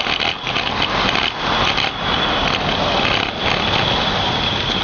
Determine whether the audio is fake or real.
real